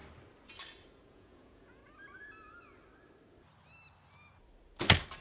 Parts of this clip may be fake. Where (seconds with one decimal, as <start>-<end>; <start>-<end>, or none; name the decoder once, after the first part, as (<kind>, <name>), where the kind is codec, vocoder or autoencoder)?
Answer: 1.1-1.8 (vocoder, Vocos)